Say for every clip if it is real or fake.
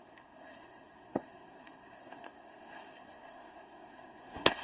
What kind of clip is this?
fake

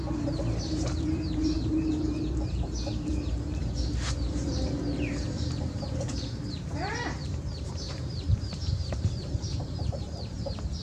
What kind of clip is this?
fake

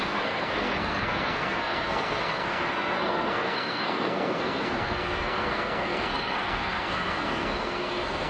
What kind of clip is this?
fake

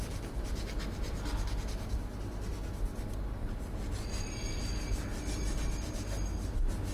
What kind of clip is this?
real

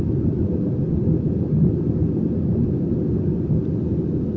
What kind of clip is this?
real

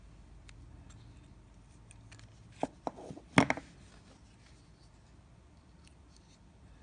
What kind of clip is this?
real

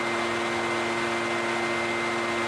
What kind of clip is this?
real